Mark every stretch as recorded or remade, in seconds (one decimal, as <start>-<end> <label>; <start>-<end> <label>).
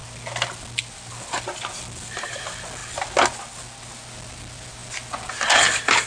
0.0-6.1 recorded